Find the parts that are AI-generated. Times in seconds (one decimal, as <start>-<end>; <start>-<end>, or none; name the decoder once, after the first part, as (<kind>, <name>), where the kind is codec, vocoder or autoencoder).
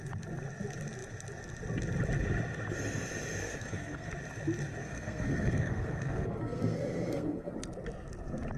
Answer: 3.4-4.1 (codec, SNAC); 4.8-7.5